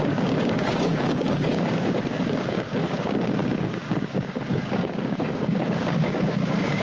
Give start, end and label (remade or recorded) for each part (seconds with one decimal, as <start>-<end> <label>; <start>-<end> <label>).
0.0-6.8 remade